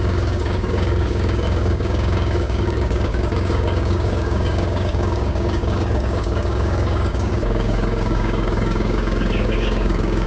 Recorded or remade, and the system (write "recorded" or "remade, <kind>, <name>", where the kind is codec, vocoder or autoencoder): remade, codec, DAC